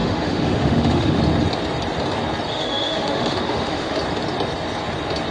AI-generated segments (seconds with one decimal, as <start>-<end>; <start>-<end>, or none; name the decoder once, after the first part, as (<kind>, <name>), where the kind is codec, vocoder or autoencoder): 0.0-1.2 (autoencoder, DAC-VAE); 2.5-4.0